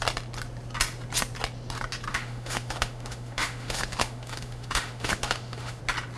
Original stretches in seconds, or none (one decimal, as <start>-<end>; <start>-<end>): 0.0-2.1; 5.8-6.2